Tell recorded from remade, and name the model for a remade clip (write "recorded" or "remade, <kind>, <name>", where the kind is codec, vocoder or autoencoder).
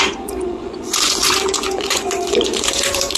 remade, vocoder, Vocos